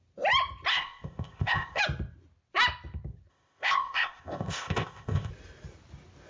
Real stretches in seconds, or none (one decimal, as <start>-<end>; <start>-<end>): 0.0-0.7; 1.8-3.3; 5.3-6.3